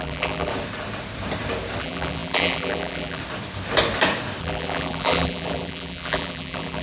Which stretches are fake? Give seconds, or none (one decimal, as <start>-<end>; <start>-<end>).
0.0-0.5; 1.8-3.2; 4.4-6.8